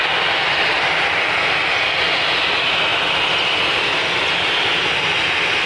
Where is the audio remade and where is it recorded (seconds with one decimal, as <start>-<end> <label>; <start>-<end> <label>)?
0.0-5.7 recorded